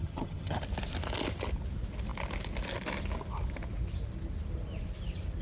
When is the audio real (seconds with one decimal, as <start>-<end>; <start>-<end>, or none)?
0.6-5.4